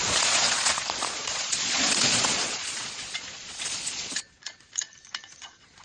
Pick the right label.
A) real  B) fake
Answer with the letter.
B